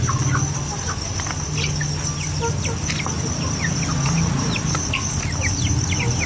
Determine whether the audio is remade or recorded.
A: recorded